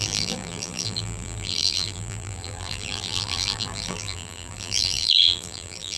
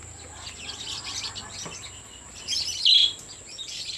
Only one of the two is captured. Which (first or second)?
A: second